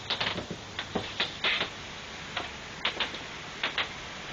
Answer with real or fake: real